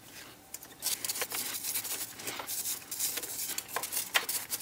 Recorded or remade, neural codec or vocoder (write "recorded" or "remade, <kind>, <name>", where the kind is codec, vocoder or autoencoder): recorded